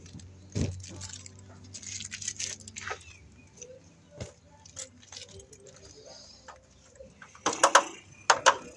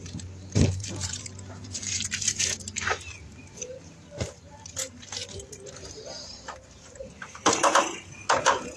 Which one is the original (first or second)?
first